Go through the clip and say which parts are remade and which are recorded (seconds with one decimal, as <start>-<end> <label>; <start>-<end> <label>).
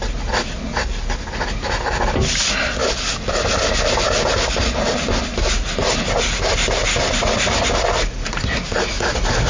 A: 0.0-9.5 recorded